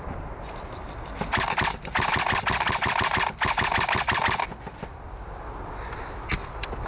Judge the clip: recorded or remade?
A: recorded